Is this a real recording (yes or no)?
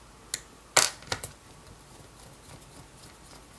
yes